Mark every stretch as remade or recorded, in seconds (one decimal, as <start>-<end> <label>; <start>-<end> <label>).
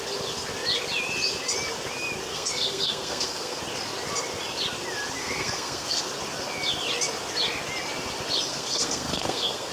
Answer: 0.0-2.3 recorded; 2.3-3.6 remade; 3.6-5.2 recorded; 5.2-6.0 remade; 6.0-8.5 recorded; 8.5-9.7 remade